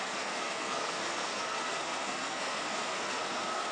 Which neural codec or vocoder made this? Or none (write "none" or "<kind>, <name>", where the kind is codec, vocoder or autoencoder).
codec, SNAC